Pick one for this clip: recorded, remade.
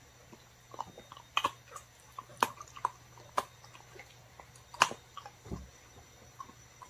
recorded